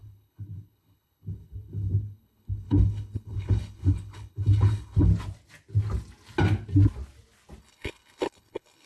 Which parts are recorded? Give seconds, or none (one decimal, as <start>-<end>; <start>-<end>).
5.1-7.6